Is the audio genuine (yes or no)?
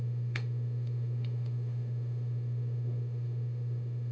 no